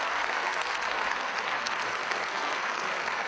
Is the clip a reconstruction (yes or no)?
yes